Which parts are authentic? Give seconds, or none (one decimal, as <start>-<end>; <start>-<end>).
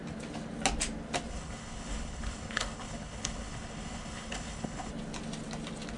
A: 0.0-1.3; 4.9-6.0